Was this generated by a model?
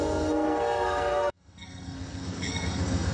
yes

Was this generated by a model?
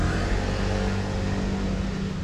no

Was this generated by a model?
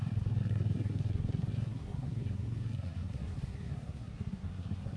yes